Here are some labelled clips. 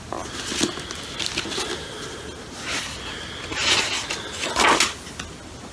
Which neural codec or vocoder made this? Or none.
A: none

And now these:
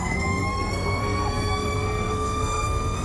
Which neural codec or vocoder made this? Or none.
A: codec, SNAC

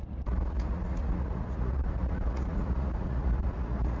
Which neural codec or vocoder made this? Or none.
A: vocoder, Vocos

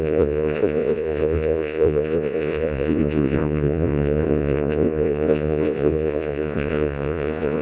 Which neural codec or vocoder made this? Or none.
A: vocoder, Vocos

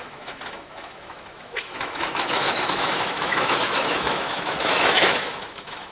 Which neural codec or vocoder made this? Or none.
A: autoencoder, DAC-VAE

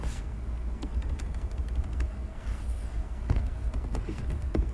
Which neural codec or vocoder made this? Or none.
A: codec, SNAC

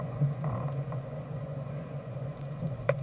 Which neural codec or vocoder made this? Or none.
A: vocoder, Vocos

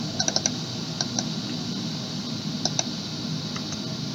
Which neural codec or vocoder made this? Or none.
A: none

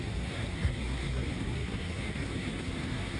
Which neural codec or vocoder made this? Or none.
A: codec, SNAC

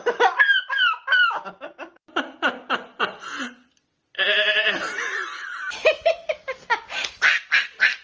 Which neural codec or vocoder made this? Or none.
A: none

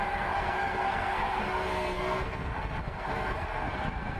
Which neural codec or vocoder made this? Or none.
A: codec, SNAC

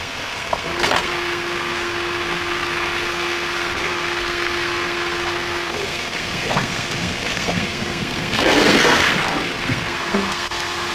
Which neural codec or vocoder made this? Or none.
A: codec, SNAC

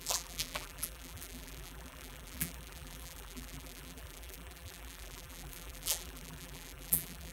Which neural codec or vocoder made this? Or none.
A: vocoder, BigVGAN v2